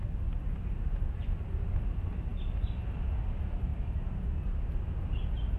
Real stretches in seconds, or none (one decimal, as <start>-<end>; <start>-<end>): 0.0-5.6